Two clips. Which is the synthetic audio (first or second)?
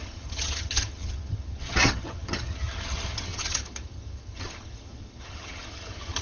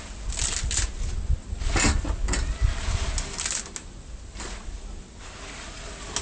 first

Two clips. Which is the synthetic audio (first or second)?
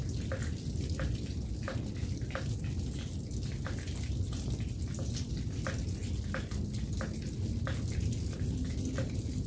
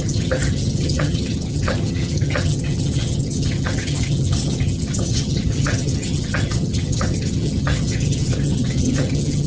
second